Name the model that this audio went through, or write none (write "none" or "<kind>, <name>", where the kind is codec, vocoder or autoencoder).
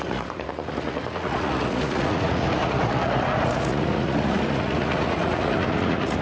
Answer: vocoder, Vocos